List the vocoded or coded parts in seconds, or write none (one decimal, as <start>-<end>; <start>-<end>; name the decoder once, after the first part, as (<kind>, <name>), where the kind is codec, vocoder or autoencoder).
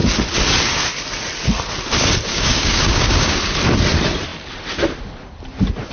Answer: 2.3-3.4 (codec, DAC)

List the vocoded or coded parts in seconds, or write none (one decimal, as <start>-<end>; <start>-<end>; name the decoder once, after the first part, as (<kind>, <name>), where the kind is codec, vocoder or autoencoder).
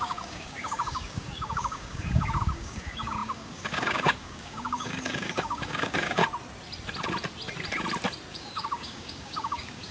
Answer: 0.0-6.2 (codec, DAC); 8.3-9.9